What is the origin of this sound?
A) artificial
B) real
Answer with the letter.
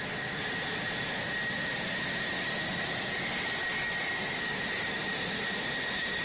B